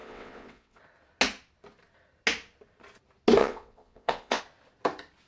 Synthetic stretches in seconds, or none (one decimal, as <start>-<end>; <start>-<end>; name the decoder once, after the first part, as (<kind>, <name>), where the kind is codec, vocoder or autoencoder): 0.0-0.8 (vocoder, WaveNeXt); 3.4-4.4